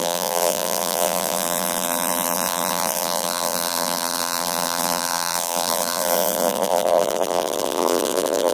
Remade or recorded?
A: remade